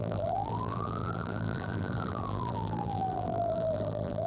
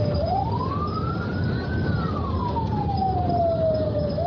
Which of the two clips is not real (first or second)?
first